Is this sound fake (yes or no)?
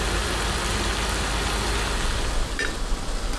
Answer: no